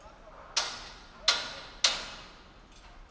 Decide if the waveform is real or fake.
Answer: real